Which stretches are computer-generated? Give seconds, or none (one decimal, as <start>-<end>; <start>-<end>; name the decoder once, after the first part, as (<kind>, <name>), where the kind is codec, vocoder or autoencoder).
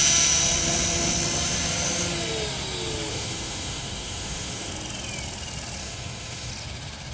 3.1-4.7 (autoencoder, DAC-VAE); 5.8-6.5